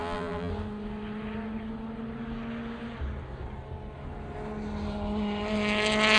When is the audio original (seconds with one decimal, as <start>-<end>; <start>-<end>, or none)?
0.5-6.2